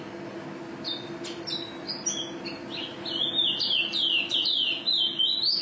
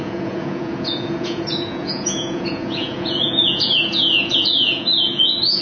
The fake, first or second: second